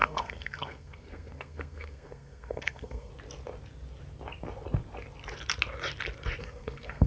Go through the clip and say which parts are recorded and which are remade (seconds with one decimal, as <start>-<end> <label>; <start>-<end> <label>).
0.0-3.1 remade; 3.1-6.4 recorded; 6.4-7.1 remade